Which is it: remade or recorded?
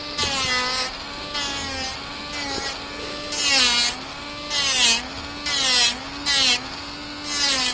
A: recorded